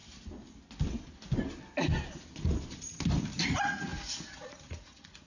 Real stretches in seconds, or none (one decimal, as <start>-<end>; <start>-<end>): 0.0-3.9

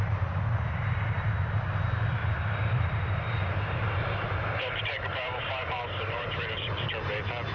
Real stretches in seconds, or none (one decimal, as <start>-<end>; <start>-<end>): 0.0-2.2; 6.7-7.5